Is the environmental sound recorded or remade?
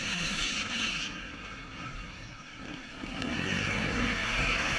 remade